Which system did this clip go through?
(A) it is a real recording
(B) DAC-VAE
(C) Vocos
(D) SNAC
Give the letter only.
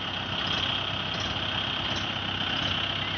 A